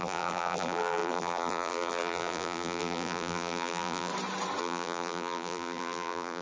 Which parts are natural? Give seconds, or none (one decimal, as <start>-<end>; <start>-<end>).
4.1-4.6